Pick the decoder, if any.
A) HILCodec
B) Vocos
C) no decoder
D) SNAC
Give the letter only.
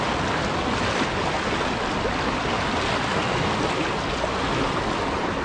C